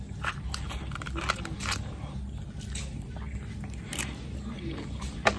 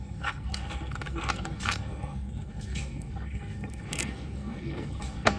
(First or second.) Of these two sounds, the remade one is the second